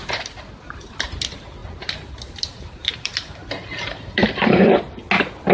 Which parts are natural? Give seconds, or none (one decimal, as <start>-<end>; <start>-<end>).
1.2-1.6; 4.8-5.5